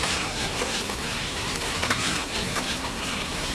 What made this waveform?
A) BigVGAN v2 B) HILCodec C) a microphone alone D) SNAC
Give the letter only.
D